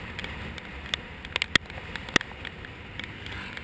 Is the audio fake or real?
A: real